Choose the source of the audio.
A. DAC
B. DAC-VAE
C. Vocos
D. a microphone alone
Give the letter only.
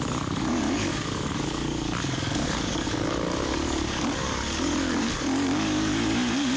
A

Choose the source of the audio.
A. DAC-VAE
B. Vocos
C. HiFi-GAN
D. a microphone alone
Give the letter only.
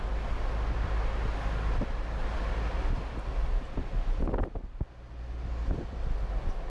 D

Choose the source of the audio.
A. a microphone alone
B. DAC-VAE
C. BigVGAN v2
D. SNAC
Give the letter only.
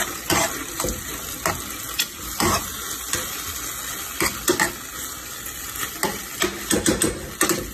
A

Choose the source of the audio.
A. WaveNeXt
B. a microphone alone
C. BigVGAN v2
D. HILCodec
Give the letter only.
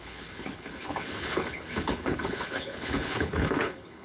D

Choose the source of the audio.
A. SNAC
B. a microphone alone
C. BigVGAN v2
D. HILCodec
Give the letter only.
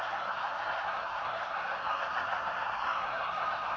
A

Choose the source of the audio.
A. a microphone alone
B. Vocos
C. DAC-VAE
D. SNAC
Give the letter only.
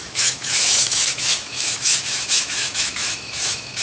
C